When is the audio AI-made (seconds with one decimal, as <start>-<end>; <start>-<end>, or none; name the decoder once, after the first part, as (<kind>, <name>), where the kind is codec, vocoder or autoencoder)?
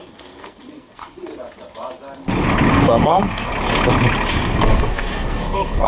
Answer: 0.0-1.3 (codec, SNAC); 2.7-3.5; 4.3-5.9